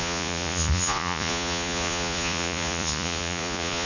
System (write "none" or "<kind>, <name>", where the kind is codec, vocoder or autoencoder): vocoder, Vocos